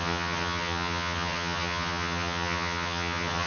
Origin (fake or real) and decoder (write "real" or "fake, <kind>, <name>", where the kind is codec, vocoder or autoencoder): fake, vocoder, HiFi-GAN